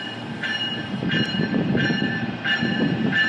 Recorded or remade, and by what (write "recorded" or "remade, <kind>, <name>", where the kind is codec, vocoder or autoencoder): remade, vocoder, BigVGAN v2